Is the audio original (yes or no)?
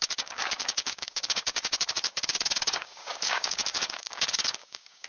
no